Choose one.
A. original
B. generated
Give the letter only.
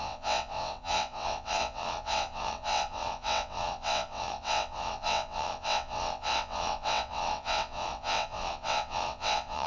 B